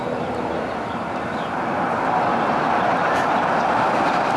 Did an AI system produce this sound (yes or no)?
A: yes